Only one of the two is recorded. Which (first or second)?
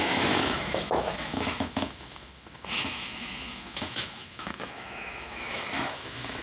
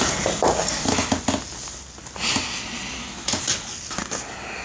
second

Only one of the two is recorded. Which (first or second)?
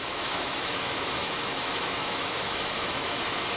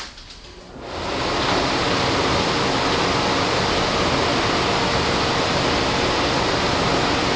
second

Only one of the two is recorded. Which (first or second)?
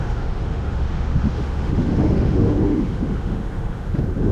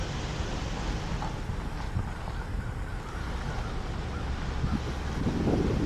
second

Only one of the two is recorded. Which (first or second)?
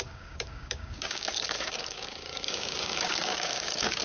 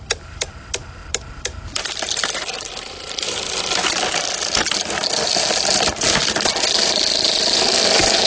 second